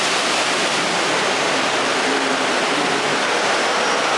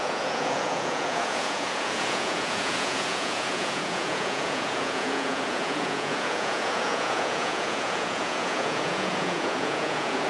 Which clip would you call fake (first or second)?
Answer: second